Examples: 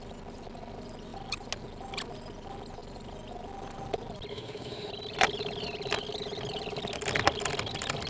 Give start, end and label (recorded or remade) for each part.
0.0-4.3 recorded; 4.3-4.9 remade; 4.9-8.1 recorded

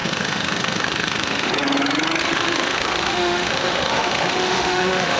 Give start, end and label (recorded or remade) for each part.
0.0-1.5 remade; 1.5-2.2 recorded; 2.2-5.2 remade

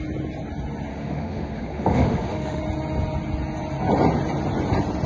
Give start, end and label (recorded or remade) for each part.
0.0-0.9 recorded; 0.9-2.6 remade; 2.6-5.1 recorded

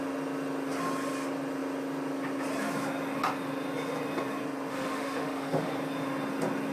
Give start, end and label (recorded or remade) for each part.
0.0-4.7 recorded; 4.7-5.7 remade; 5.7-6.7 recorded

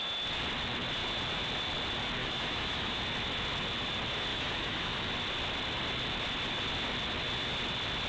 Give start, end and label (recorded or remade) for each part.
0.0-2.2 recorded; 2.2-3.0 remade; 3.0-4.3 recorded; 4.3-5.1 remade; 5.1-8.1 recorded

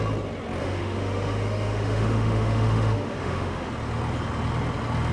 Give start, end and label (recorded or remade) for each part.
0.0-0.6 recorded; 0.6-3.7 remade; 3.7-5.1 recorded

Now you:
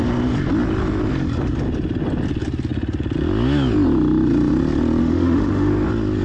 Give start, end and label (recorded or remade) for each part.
0.0-5.0 recorded; 5.0-5.7 remade; 5.7-6.2 recorded

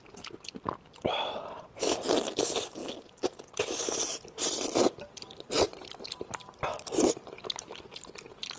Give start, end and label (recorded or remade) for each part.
0.0-8.6 recorded